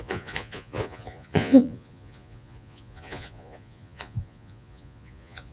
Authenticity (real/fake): fake